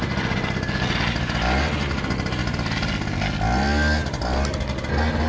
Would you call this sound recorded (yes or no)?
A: yes